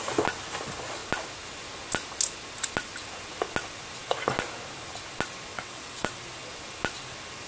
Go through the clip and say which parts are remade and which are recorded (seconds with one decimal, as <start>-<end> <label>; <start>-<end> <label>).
0.0-5.5 recorded; 5.5-6.2 remade; 6.2-7.5 recorded